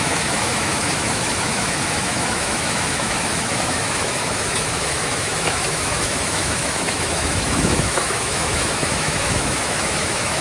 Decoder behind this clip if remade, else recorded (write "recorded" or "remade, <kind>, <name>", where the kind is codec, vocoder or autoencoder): remade, autoencoder, DAC-VAE